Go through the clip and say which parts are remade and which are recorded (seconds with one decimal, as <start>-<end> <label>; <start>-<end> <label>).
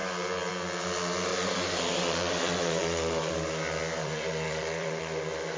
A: 0.0-1.3 recorded; 1.3-3.3 remade; 3.3-4.0 recorded; 4.0-5.0 remade; 5.0-5.6 recorded